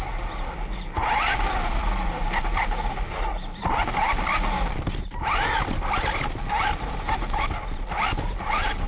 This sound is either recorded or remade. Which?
recorded